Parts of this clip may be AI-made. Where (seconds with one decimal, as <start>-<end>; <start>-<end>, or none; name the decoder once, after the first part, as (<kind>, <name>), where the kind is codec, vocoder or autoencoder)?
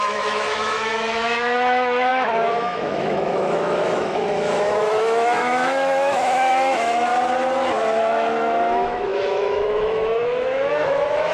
0.0-7.1 (autoencoder, DAC-VAE); 8.0-11.3